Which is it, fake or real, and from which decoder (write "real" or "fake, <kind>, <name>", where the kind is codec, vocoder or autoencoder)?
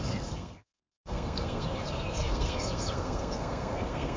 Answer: fake, codec, SNAC